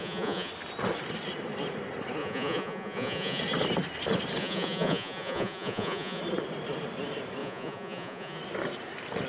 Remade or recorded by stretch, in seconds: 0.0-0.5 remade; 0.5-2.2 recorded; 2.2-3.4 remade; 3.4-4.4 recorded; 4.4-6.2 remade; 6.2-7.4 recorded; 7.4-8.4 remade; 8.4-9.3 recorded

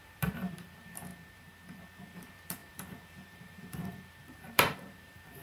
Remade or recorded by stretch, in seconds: 0.0-5.4 remade

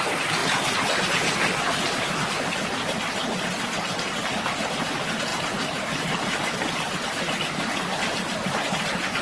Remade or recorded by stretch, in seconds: 0.0-9.2 recorded

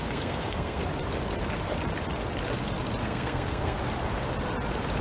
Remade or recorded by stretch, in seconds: 0.0-0.8 remade; 0.8-3.0 recorded; 3.0-3.8 remade; 3.8-5.0 recorded

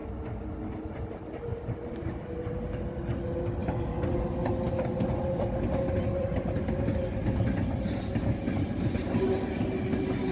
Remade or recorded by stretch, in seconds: 0.0-1.5 recorded; 1.5-2.8 remade; 2.8-10.3 recorded